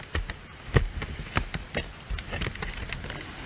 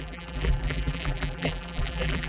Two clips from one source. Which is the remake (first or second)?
second